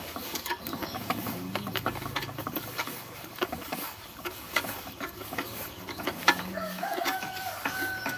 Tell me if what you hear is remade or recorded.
remade